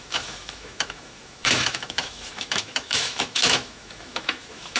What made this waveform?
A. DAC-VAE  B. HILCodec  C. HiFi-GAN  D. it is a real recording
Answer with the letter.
A